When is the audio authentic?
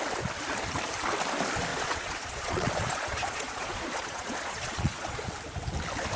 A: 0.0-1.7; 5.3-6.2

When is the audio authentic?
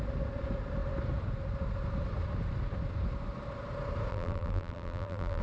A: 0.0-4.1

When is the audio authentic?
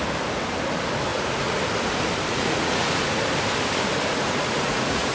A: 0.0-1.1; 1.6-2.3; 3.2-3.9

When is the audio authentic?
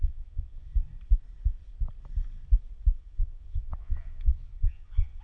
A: 0.7-3.0